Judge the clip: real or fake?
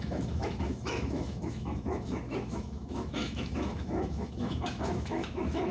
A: fake